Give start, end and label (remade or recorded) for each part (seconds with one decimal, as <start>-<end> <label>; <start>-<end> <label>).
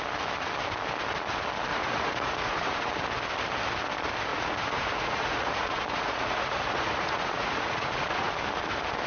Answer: 0.0-1.7 recorded; 1.7-2.9 remade; 2.9-4.3 recorded; 4.3-8.3 remade; 8.3-9.1 recorded